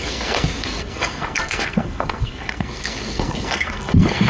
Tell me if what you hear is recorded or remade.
remade